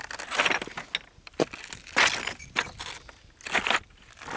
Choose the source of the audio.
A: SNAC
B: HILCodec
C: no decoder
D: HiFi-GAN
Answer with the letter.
C